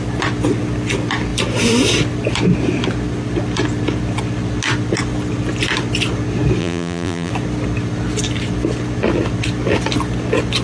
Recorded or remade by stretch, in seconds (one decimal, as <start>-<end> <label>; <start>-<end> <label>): 0.0-6.6 recorded; 6.6-7.3 remade; 7.3-10.6 recorded

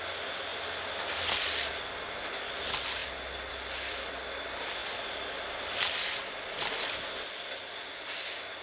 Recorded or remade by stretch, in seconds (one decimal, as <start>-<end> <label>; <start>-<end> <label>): 0.0-8.6 recorded